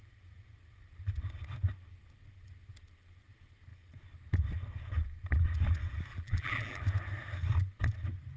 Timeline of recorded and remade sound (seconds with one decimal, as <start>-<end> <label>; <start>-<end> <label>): 0.0-6.1 recorded; 6.1-6.8 remade; 6.8-8.4 recorded